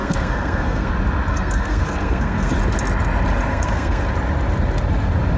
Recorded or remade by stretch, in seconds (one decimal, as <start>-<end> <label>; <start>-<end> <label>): 0.0-0.9 remade; 0.9-1.3 recorded; 1.3-2.5 remade; 2.5-3.5 recorded; 3.5-4.0 remade; 4.0-5.4 recorded